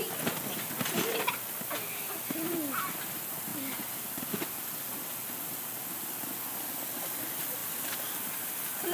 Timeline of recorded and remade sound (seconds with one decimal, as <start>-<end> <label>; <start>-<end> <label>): 0.0-8.9 recorded